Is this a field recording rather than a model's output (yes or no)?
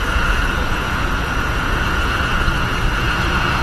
no